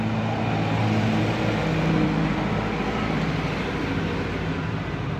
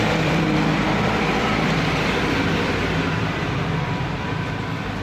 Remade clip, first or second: second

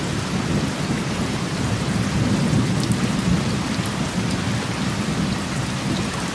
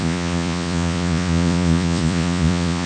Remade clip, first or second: second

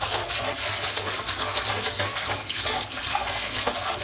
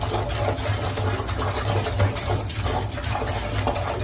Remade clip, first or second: first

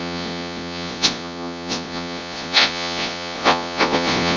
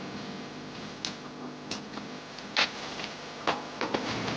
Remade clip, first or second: first